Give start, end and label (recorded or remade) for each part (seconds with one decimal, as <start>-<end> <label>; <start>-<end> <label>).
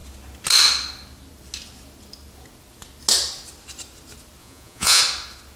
0.0-4.4 recorded; 4.4-5.0 remade; 5.0-5.6 recorded